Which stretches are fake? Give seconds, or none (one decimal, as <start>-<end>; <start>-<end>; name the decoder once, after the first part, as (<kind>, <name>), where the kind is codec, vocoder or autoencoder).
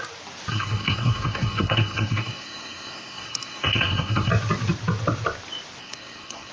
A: 0.5-4.3 (codec, SNAC); 5.8-6.5